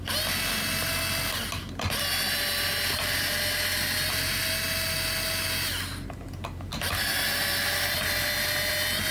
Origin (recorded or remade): recorded